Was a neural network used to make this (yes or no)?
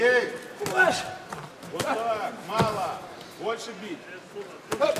no